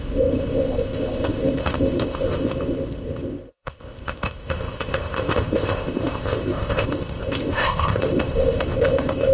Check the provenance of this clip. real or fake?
fake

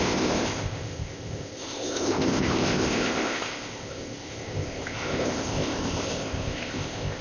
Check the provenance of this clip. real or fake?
fake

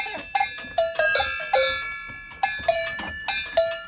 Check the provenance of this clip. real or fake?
real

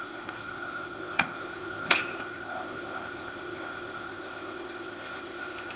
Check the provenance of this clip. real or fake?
fake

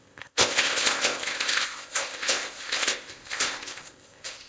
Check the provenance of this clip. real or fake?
fake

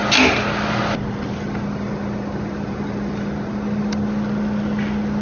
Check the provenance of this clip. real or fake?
real